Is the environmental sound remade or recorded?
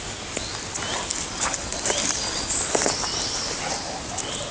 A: recorded